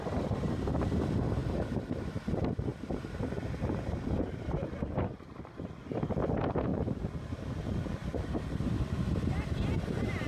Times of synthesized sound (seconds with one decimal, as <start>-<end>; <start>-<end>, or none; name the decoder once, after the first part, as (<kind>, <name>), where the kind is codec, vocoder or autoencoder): 1.4-2.1 (vocoder, BigVGAN v2); 2.7-5.7; 8.0-10.3